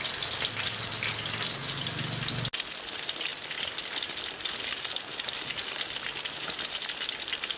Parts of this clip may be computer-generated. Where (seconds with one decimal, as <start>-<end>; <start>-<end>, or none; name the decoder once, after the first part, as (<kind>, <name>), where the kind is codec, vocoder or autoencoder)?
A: none